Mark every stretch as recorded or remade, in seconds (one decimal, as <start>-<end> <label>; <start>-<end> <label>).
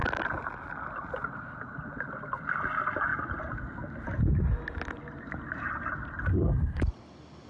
0.0-6.3 recorded; 6.3-6.8 remade; 6.8-7.5 recorded